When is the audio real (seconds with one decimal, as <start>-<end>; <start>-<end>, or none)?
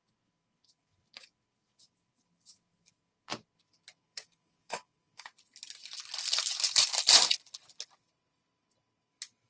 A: 3.3-4.0; 5.3-9.5